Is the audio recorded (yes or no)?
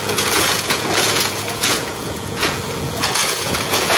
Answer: no